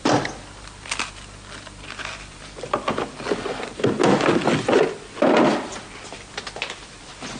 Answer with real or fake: real